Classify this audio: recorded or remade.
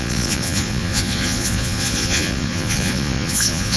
remade